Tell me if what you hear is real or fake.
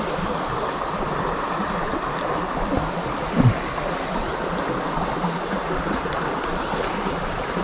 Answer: real